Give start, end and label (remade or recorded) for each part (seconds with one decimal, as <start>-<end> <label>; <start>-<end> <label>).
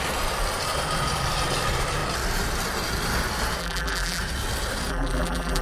0.0-3.6 recorded; 3.6-4.2 remade; 4.2-4.9 recorded; 4.9-5.6 remade